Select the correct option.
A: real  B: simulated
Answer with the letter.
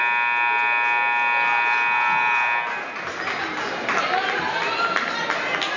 A